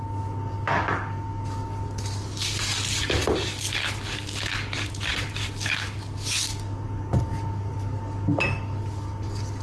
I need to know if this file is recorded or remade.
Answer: remade